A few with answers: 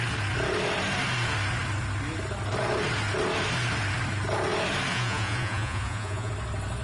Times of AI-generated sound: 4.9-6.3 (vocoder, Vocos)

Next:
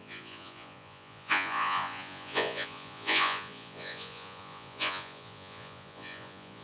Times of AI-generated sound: 0.0-6.6 (vocoder, Vocos)

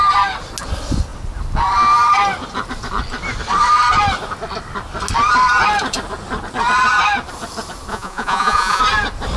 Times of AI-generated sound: 7.9-8.8 (vocoder, Vocos)